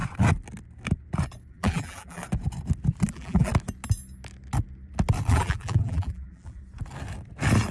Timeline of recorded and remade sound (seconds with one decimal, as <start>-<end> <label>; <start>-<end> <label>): 0.0-1.5 recorded; 1.5-2.2 remade; 2.2-3.1 recorded; 3.1-3.5 remade; 3.5-5.3 recorded; 5.3-6.6 remade; 6.6-7.7 recorded